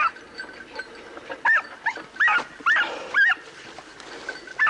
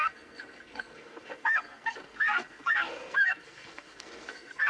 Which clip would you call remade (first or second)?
second